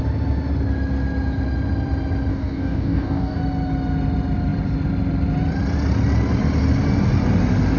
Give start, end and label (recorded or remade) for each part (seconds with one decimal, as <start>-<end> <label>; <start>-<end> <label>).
0.0-2.3 recorded; 2.3-3.4 remade; 3.4-7.8 recorded

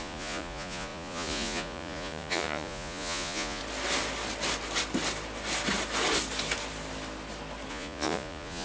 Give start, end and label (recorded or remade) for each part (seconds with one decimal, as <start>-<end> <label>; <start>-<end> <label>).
0.0-3.6 remade; 3.6-7.7 recorded; 7.7-8.6 remade

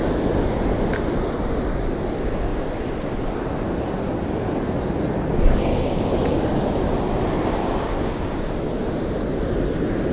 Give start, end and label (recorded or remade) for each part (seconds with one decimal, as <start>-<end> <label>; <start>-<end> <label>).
0.0-5.7 recorded; 5.7-6.4 remade; 6.4-7.6 recorded; 7.6-8.4 remade; 8.4-10.1 recorded